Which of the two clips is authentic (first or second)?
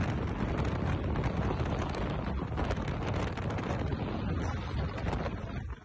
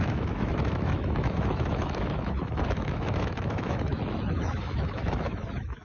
first